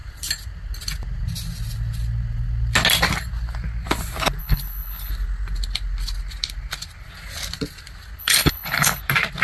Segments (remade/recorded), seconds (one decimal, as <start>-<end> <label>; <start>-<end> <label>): 0.0-4.4 recorded; 4.4-5.1 remade; 5.1-8.2 recorded; 8.2-9.0 remade; 9.0-9.4 recorded